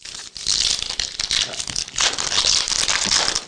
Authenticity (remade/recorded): recorded